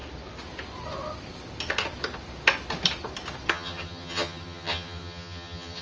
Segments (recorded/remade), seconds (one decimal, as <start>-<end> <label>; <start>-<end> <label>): 0.0-3.5 recorded; 3.5-5.8 remade

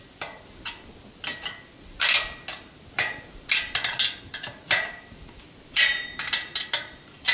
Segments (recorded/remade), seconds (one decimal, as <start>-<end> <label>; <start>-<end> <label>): 0.0-7.3 recorded

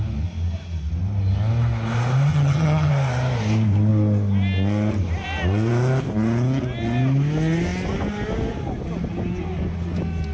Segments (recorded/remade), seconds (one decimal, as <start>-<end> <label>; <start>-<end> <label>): 0.0-2.3 recorded; 2.3-2.9 remade; 2.9-10.3 recorded

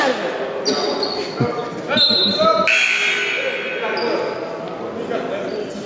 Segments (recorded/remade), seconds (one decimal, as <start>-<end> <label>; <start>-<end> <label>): 0.0-5.9 recorded

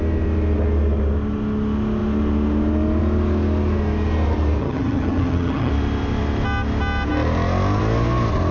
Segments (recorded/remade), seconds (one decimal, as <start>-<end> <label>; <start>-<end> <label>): 0.0-4.6 recorded; 4.6-5.7 remade; 5.7-8.5 recorded

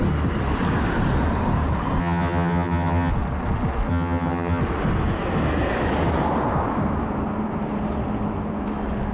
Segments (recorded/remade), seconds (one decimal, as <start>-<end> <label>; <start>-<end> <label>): 0.0-2.0 recorded; 2.0-3.1 remade; 3.1-3.9 recorded; 3.9-4.6 remade; 4.6-9.1 recorded

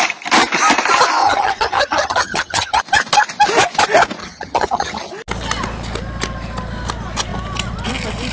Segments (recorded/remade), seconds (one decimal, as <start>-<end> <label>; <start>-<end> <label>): 0.0-1.2 recorded; 1.2-2.8 remade; 2.8-4.2 recorded; 4.2-5.1 remade; 5.1-8.3 recorded

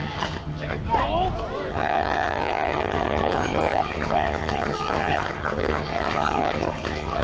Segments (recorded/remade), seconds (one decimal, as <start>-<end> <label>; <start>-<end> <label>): 0.0-0.8 remade; 0.8-1.7 recorded; 1.7-7.2 remade